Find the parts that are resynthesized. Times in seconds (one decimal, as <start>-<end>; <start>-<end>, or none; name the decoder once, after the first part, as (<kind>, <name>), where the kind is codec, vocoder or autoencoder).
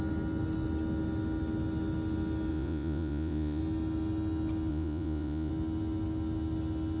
2.5-3.6 (vocoder, Vocos); 4.7-5.5